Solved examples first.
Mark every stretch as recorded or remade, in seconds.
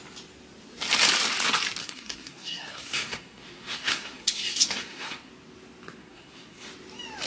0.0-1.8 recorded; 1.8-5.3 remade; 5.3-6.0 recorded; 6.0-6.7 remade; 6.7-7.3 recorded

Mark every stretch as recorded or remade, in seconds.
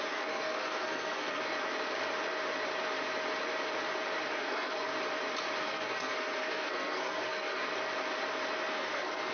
0.0-1.4 remade; 1.4-4.3 recorded; 4.3-4.9 remade; 4.9-5.6 recorded; 5.6-7.7 remade; 7.7-8.7 recorded; 8.7-9.3 remade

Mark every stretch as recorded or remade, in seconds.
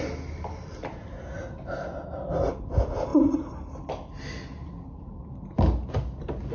0.0-6.5 recorded